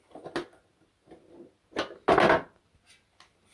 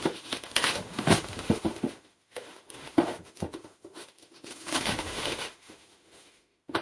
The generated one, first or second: second